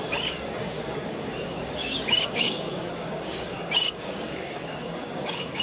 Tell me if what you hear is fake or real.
fake